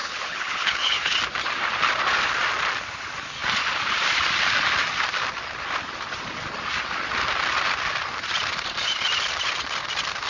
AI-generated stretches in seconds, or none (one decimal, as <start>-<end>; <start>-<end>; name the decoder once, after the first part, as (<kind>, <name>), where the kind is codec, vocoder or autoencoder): 0.0-1.2 (codec, HILCodec)